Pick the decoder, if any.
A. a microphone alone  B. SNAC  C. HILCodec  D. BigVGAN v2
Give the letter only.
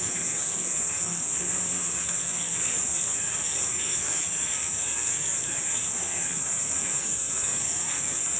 B